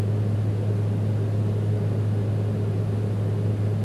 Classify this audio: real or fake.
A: real